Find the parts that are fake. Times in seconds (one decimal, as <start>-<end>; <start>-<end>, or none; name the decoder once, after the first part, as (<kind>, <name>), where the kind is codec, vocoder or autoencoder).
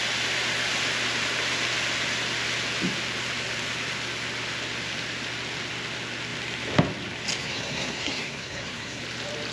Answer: 7.4-9.0 (codec, SNAC)